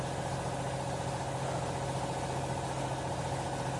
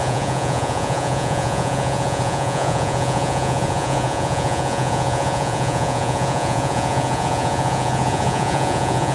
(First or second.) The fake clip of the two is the second